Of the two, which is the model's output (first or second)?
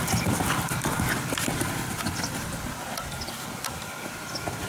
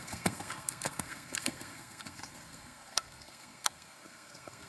second